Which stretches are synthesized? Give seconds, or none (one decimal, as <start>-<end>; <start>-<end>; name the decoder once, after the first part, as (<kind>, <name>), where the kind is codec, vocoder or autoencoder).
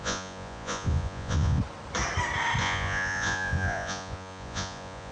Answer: 0.0-1.6 (vocoder, Vocos); 2.6-5.1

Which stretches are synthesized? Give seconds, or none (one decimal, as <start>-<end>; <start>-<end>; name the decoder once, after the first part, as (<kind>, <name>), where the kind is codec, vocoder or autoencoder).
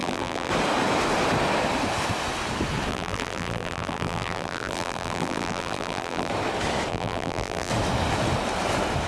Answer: 0.0-0.5 (vocoder, BigVGAN v2); 2.9-6.3; 6.9-7.7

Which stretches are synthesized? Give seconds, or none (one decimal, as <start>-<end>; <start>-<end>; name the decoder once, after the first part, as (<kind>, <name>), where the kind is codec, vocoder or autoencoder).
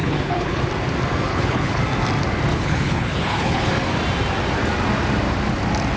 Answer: 0.0-0.6 (codec, HILCodec); 1.3-1.8; 2.5-3.7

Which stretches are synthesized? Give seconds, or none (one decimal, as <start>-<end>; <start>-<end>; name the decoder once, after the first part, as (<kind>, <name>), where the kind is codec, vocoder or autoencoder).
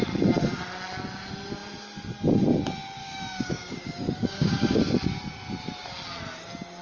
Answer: 3.0-4.8 (codec, DAC)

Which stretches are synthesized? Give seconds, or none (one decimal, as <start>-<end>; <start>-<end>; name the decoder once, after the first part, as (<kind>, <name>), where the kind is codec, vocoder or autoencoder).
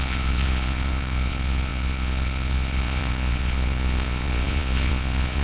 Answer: 0.0-5.4 (vocoder, Vocos)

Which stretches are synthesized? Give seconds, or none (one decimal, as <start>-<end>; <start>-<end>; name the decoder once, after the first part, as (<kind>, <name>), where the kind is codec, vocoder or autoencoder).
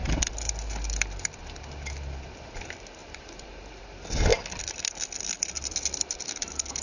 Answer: 3.0-3.8 (vocoder, BigVGAN v2)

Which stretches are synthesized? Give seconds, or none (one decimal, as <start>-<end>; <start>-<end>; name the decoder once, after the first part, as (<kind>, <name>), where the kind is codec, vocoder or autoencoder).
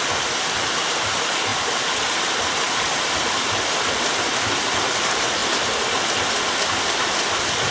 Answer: 1.5-3.5 (vocoder, BigVGAN v2)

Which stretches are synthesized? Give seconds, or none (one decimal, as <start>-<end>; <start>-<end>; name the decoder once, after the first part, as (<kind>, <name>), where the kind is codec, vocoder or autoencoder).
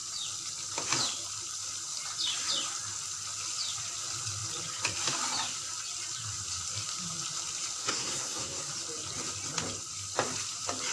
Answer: 7.8-8.6 (codec, SNAC)